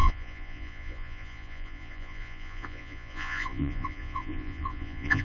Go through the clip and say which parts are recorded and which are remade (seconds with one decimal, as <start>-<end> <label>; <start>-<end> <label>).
0.0-5.2 remade